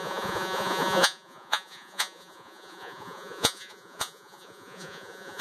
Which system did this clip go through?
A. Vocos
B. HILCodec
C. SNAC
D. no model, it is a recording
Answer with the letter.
A